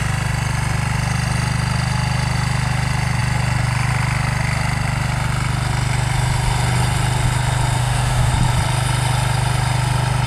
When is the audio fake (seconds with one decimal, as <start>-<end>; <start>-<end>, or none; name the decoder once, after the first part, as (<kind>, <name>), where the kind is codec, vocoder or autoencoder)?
7.8-8.3 (autoencoder, DAC-VAE)